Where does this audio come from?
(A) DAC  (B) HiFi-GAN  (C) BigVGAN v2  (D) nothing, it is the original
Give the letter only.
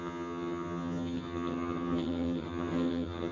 B